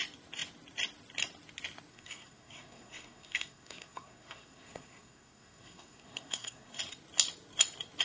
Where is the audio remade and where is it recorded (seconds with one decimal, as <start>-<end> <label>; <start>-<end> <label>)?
0.0-1.9 recorded; 1.9-6.7 remade; 6.7-8.0 recorded